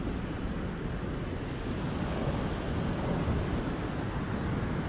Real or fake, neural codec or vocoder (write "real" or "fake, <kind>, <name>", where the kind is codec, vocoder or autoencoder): real